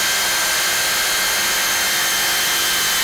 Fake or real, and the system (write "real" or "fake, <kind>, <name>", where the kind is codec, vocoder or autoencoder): real